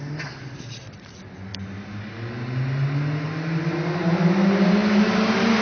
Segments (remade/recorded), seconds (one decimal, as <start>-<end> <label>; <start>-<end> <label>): 0.0-5.6 recorded